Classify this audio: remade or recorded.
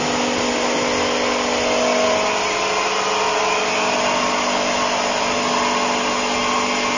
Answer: recorded